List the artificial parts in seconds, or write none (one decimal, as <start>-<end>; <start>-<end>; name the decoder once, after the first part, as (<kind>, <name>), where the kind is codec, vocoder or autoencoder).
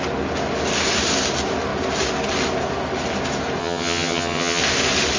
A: 3.6-4.6 (vocoder, HiFi-GAN)